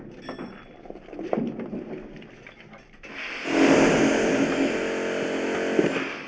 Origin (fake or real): real